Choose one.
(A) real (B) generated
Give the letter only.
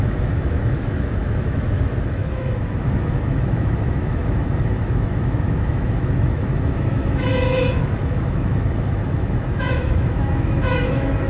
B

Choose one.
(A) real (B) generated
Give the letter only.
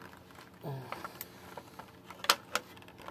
A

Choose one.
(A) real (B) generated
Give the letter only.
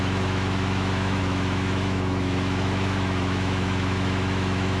B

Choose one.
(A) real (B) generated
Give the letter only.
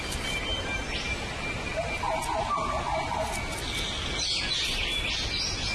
A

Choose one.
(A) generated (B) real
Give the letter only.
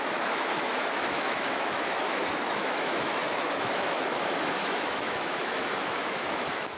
A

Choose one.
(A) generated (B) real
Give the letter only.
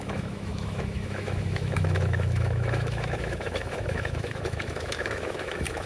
A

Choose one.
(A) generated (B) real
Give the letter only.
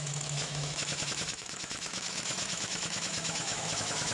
A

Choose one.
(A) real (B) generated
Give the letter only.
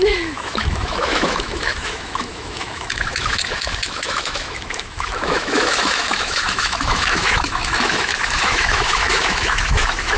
B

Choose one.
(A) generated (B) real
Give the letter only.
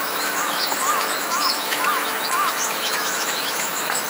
A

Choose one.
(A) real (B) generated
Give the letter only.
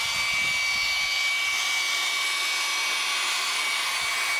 A